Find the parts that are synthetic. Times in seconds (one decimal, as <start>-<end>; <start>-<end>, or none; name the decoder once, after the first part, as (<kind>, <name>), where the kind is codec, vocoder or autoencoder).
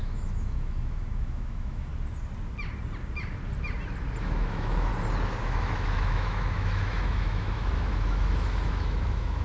0.0-1.9 (autoencoder, DAC-VAE); 4.2-4.9; 5.4-9.4